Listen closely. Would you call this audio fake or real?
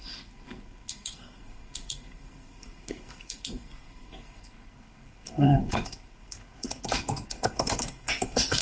fake